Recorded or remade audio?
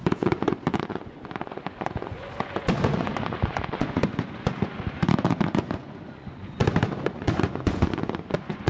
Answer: remade